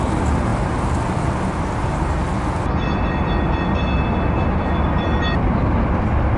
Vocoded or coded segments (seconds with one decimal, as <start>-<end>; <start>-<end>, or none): none